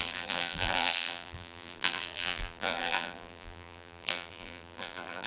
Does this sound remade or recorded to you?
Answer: remade